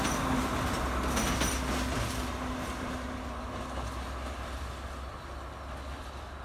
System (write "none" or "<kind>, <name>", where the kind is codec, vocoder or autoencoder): none